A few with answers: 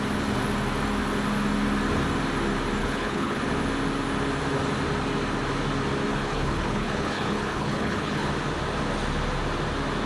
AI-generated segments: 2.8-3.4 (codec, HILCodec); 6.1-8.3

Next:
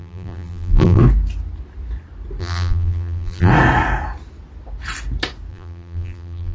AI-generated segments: 0.0-1.0 (vocoder, BigVGAN v2); 2.4-3.5; 5.5-6.5

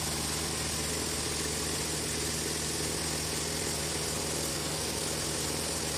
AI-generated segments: 4.5-5.0 (codec, SNAC)

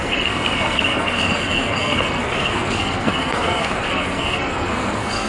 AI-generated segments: 0.0-5.3 (codec, SNAC)

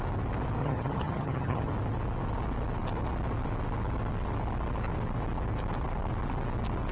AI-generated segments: 0.6-1.7 (vocoder, HiFi-GAN)

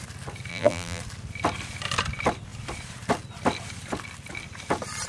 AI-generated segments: 0.5-1.0 (vocoder, BigVGAN v2)

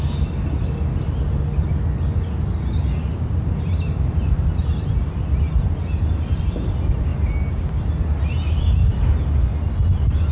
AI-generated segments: none

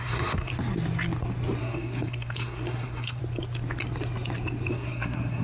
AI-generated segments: 0.0-0.5 (codec, SNAC); 1.6-3.2; 4.7-5.4